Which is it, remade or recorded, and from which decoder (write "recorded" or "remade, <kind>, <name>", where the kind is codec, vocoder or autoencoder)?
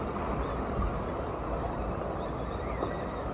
recorded